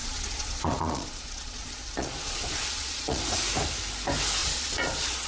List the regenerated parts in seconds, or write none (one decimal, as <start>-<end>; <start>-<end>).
0.0-3.2; 4.4-5.3